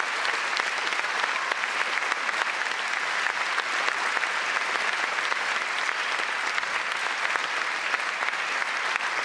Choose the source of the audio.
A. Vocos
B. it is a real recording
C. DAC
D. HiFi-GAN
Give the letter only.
B